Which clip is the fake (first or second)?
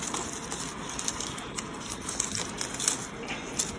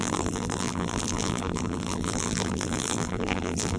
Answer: second